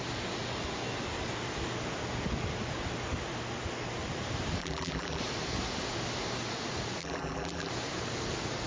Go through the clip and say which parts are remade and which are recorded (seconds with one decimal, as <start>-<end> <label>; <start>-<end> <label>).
0.0-4.6 recorded; 4.6-5.2 remade; 5.2-7.0 recorded; 7.0-7.7 remade; 7.7-8.7 recorded